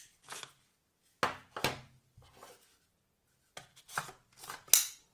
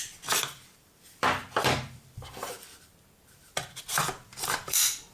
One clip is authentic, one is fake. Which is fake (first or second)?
second